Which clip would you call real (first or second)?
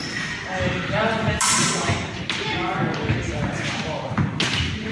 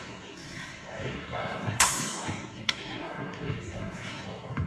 first